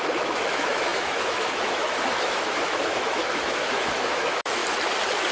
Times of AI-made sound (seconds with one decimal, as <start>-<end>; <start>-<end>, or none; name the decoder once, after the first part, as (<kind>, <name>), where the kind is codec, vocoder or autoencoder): 0.0-4.6 (autoencoder, DAC-VAE)